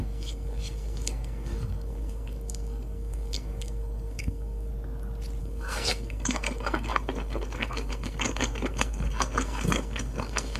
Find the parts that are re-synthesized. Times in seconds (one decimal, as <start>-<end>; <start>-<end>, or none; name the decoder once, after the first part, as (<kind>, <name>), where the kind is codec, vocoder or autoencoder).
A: 0.0-4.7 (codec, SNAC); 5.4-10.6